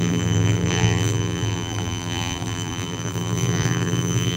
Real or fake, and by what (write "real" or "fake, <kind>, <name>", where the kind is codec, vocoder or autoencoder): fake, vocoder, BigVGAN v2